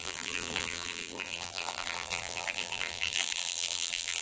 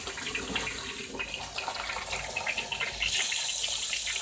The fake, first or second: first